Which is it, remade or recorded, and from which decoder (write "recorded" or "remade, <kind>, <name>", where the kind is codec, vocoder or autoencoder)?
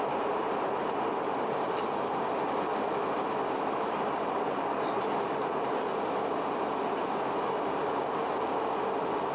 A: recorded